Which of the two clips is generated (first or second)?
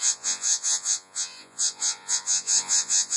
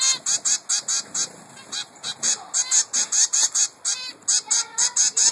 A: first